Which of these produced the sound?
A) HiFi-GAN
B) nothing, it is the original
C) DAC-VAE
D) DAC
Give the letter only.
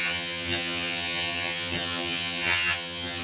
A